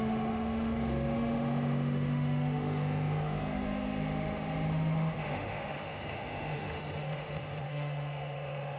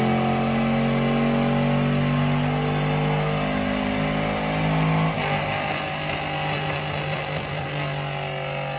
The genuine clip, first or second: second